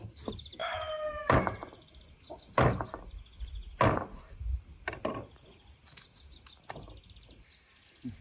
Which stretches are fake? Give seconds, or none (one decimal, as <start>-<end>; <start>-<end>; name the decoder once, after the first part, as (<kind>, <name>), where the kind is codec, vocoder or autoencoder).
none